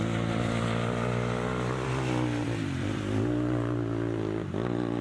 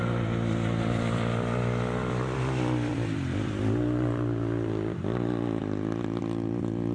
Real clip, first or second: first